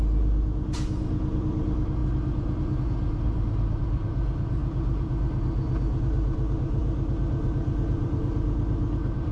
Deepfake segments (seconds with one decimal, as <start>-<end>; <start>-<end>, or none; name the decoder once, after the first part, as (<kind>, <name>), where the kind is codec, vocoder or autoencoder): none

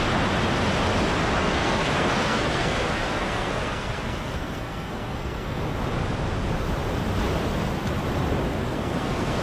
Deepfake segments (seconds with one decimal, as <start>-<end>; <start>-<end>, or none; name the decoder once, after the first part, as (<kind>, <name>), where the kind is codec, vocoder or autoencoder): 1.4-5.6 (codec, SNAC); 8.6-9.4

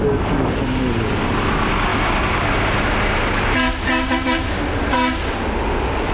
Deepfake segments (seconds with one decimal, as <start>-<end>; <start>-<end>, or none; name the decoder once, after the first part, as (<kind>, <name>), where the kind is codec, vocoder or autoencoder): none

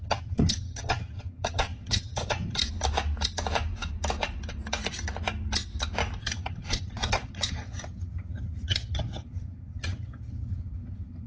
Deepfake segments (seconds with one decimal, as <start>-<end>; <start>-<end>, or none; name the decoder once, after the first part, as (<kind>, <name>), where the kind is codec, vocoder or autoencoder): 0.0-2.6 (vocoder, HiFi-GAN); 6.2-11.3

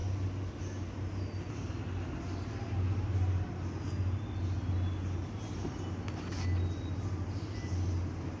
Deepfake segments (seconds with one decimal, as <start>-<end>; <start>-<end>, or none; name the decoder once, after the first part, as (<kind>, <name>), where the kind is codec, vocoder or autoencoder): none